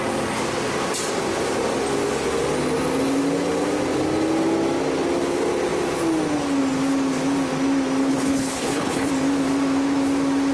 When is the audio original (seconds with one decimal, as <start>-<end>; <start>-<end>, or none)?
0.0-8.0; 9.1-10.5